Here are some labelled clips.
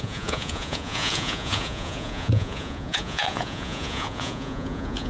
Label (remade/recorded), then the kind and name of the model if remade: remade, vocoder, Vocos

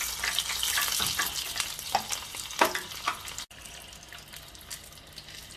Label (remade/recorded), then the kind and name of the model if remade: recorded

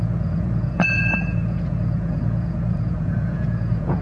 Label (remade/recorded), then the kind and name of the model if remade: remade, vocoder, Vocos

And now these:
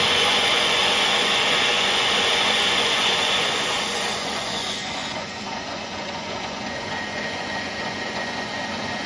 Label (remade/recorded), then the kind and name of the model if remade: remade, vocoder, Vocos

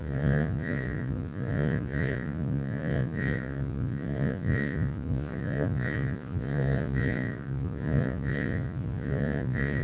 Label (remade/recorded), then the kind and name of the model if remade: remade, vocoder, Vocos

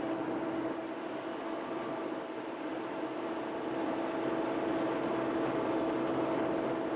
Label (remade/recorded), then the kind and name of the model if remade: recorded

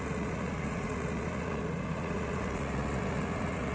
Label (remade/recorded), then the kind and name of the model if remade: remade, vocoder, Vocos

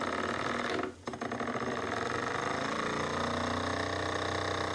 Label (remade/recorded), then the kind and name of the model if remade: recorded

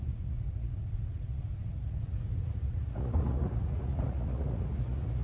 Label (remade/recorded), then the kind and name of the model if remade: remade, vocoder, Vocos